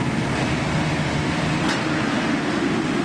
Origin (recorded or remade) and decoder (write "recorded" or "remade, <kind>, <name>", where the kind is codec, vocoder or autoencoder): recorded